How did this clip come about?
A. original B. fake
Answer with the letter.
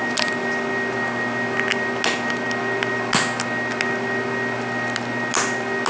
A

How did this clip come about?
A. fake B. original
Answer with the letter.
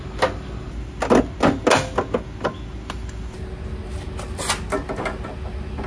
B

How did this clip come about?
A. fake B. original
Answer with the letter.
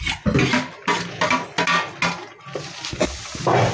B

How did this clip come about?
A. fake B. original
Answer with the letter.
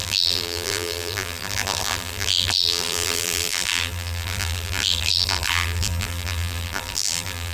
A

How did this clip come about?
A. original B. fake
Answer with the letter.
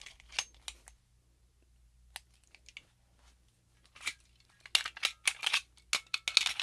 A